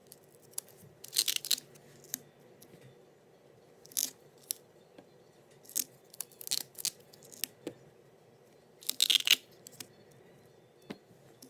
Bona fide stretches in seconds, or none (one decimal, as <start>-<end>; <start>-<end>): 0.0-11.5